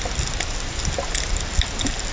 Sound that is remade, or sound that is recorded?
recorded